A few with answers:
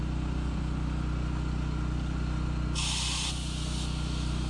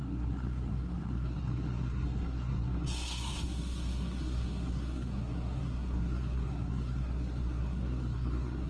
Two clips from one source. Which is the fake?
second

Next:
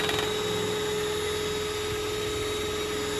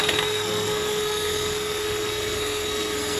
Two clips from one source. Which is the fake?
second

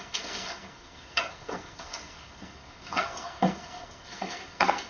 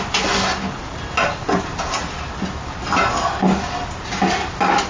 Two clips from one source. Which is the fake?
first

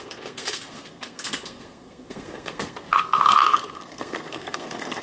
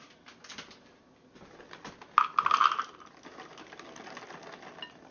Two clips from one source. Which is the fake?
first